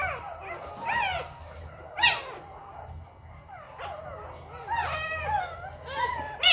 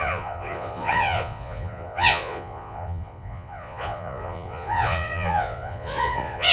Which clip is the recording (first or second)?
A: first